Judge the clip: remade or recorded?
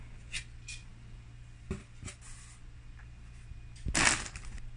recorded